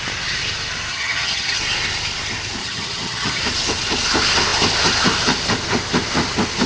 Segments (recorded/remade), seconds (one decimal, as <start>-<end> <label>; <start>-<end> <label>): 0.0-0.9 recorded; 0.9-1.6 remade; 1.6-2.6 recorded; 2.6-3.4 remade; 3.4-6.7 recorded